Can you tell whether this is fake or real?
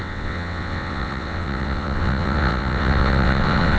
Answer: fake